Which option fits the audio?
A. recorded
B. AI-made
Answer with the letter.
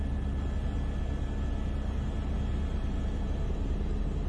A